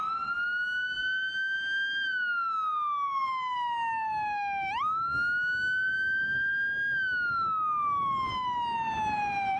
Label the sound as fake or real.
real